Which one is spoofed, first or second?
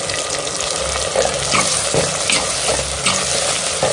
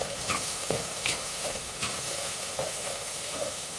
second